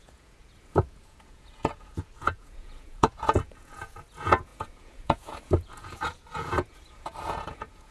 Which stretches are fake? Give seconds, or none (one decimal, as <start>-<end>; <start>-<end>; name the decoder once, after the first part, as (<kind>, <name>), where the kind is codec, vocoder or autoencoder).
0.0-7.9 (vocoder, Vocos)